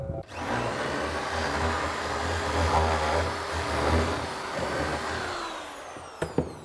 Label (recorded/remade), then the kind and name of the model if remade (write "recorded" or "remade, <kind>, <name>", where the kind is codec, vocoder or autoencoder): recorded